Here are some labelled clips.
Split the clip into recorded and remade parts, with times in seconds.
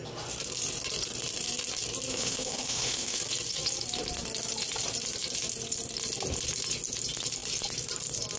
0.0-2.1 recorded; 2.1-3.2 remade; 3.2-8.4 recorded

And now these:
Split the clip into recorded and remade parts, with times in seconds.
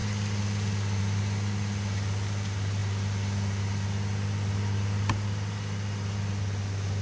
0.0-7.0 recorded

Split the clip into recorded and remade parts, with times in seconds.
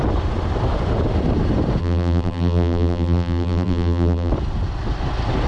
0.0-1.8 recorded; 1.8-4.3 remade; 4.3-5.5 recorded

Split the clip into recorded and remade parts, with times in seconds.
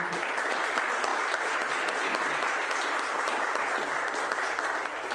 0.0-5.1 recorded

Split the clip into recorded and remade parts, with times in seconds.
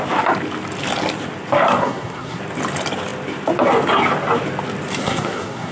0.0-1.8 recorded; 1.8-2.4 remade; 2.4-5.0 recorded; 5.0-5.7 remade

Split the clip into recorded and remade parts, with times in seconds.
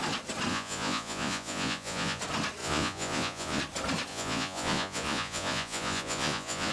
0.0-0.5 recorded; 0.5-2.2 remade; 2.2-2.6 recorded; 2.6-3.6 remade; 3.6-4.1 recorded; 4.1-6.7 remade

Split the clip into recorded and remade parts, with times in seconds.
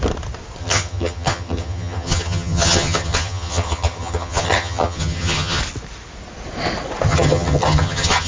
0.0-0.6 recorded; 0.6-5.6 remade; 5.6-7.1 recorded; 7.1-8.3 remade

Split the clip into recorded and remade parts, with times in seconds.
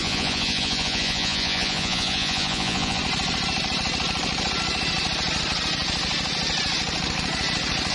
0.0-3.0 remade; 3.0-7.9 recorded